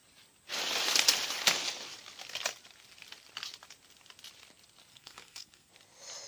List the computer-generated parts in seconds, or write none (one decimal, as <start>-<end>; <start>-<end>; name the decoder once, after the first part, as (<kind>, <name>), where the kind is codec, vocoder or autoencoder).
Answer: 4.9-5.7 (codec, SNAC)